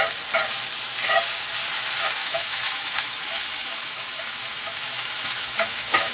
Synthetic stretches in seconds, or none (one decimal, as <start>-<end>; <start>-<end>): 2.2-6.1